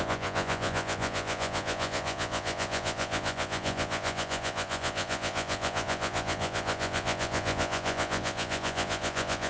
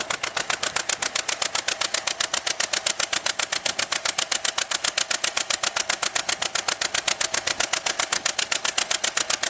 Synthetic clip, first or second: first